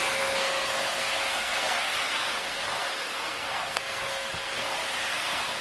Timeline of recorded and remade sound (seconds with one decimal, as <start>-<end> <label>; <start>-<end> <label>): 0.0-5.6 remade

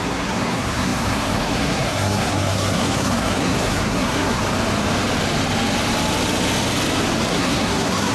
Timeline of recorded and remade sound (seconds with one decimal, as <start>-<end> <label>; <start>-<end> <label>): 0.0-4.4 remade; 4.4-7.3 recorded; 7.3-8.1 remade